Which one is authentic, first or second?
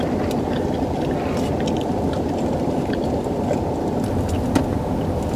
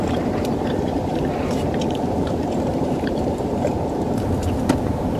first